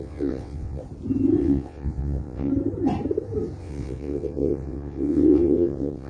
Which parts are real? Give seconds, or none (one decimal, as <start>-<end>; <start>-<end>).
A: 0.8-1.4; 2.5-3.6